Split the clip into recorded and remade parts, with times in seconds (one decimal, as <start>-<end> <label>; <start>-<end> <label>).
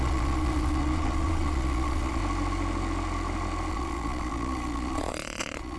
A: 0.0-2.2 remade; 2.2-3.7 recorded; 3.7-5.8 remade